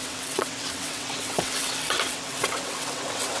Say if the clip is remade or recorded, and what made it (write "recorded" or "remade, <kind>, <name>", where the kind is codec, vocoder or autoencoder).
remade, vocoder, WaveNeXt